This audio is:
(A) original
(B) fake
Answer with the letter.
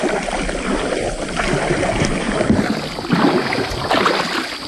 A